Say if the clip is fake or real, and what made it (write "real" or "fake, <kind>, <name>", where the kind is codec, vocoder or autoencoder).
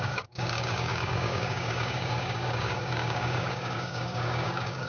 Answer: fake, codec, DAC